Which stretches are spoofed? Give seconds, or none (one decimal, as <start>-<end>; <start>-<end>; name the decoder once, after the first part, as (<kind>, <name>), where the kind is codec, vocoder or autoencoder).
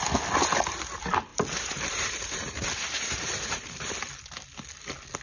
1.3-3.9 (vocoder, BigVGAN v2)